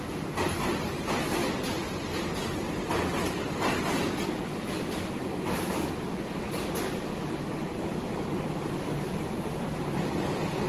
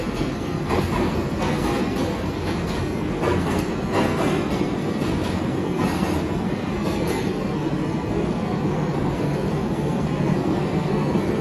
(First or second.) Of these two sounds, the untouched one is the first